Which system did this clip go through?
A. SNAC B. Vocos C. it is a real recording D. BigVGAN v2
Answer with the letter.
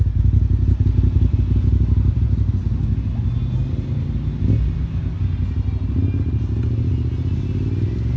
C